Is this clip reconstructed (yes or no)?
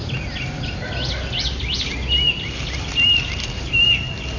no